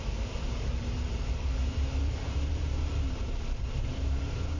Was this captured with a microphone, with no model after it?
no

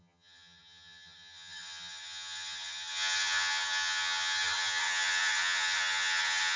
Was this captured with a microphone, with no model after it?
no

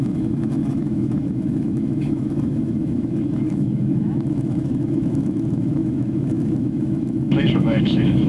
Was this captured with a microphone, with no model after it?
no